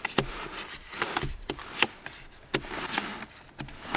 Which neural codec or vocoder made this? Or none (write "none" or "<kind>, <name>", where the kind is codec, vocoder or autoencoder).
none